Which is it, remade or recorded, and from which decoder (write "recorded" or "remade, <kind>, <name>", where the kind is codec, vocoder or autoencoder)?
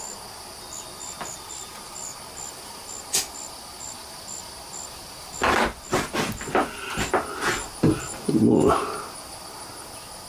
recorded